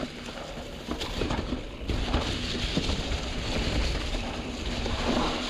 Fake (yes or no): no